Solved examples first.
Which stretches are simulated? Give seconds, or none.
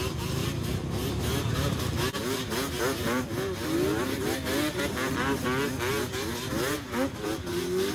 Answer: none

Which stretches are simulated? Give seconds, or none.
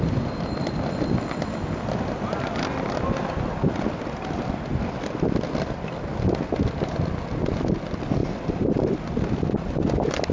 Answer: 4.7-5.8 (vocoder, BigVGAN v2); 8.2-8.7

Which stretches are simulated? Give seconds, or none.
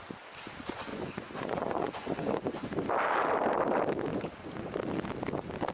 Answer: 0.9-2.7 (vocoder, Vocos); 4.1-4.7